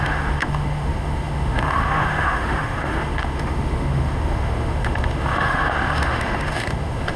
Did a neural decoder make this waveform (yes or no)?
yes